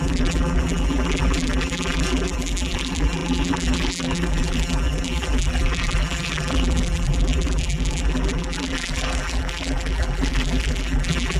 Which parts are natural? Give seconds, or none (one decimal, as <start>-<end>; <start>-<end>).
none